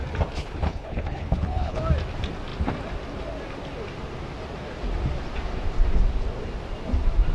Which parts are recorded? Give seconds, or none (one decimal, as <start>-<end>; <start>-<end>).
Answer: 0.0-0.4; 1.8-7.3